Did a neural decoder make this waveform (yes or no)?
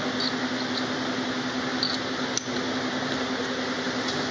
no